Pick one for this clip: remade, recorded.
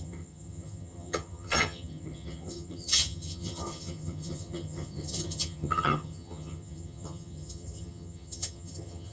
remade